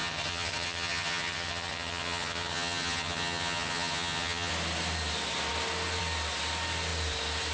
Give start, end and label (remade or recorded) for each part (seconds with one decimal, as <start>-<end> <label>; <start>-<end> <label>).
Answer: 0.0-4.5 remade; 4.5-7.5 recorded